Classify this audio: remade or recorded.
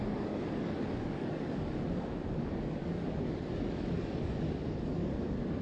remade